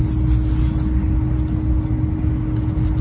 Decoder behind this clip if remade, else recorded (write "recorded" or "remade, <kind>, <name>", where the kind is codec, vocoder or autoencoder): recorded